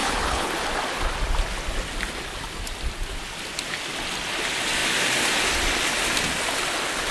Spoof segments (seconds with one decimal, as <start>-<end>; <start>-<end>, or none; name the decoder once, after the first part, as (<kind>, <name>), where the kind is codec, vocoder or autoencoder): 0.0-0.5 (codec, HILCodec)